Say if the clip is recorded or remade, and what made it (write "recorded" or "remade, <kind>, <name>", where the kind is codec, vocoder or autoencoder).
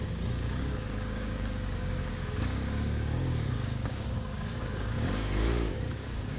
remade, codec, DAC